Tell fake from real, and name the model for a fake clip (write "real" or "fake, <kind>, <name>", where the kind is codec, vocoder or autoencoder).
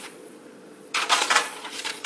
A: fake, vocoder, Vocos